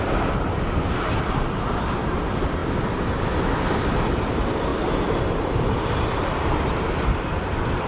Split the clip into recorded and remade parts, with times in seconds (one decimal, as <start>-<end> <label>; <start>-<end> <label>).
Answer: 0.0-2.6 remade; 2.6-4.2 recorded; 4.2-4.7 remade; 4.7-6.1 recorded; 6.1-7.9 remade